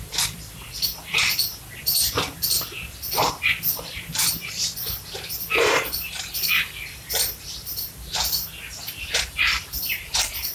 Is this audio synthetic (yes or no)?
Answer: yes